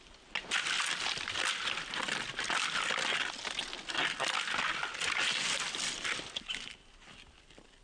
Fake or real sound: real